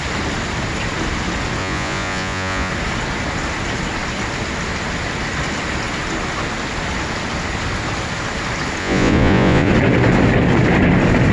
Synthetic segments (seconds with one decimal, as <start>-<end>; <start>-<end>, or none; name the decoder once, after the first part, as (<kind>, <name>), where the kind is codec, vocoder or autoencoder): 1.6-2.7 (vocoder, Vocos); 8.8-9.7